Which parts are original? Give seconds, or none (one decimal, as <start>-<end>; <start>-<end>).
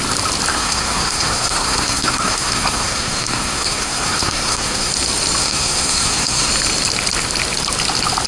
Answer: 0.0-0.5; 4.9-5.4; 6.5-8.3